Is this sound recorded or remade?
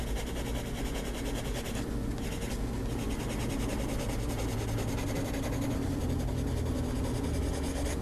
recorded